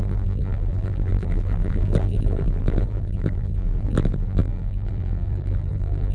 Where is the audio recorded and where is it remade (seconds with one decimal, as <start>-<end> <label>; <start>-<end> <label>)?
0.0-6.1 remade

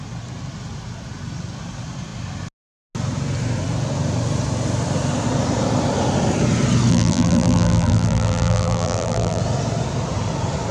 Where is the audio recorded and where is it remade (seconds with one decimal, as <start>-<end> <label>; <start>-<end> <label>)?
0.0-6.9 recorded; 6.9-9.4 remade; 9.4-10.7 recorded